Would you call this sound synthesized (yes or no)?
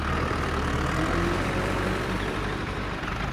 yes